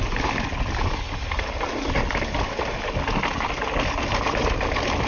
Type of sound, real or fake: real